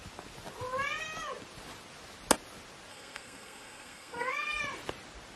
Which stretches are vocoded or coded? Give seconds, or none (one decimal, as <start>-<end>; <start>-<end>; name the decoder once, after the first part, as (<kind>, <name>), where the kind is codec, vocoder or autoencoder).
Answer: 2.9-4.6 (codec, SNAC)